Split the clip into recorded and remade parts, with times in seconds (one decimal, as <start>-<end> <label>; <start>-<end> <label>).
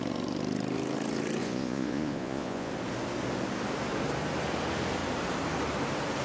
0.0-1.4 recorded; 1.4-2.7 remade; 2.7-6.2 recorded